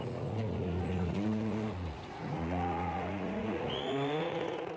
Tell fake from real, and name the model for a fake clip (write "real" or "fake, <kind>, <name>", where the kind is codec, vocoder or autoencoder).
fake, vocoder, Vocos